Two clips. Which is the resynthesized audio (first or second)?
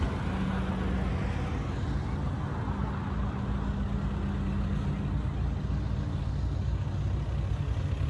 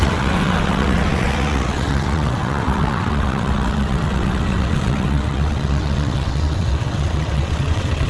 second